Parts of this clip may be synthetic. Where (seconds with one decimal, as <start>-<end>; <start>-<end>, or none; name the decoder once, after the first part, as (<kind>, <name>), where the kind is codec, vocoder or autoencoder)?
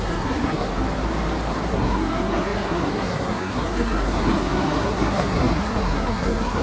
0.0-0.7 (codec, SNAC); 1.7-6.6